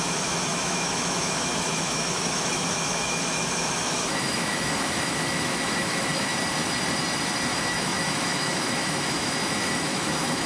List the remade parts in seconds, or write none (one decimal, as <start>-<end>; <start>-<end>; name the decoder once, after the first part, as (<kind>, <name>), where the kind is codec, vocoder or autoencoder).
0.0-6.3 (autoencoder, DAC-VAE); 7.5-10.5